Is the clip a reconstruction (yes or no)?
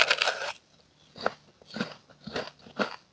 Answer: no